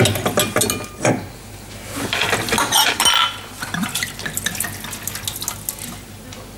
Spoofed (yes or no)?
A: no